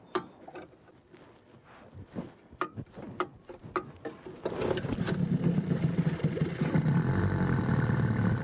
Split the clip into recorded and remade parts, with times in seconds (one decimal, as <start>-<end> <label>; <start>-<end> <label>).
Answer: 0.0-8.4 recorded